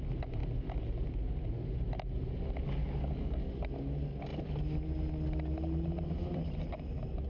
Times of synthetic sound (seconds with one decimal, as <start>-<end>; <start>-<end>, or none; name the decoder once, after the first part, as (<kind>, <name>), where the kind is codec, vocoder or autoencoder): 2.8-3.5 (codec, DAC)